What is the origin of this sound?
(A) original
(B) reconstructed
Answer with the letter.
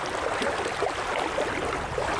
A